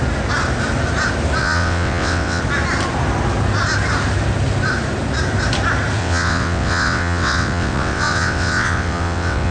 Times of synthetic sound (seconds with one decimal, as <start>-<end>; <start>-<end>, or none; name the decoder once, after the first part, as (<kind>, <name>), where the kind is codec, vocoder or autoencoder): 1.4-2.4 (vocoder, WaveNeXt); 6.0-9.5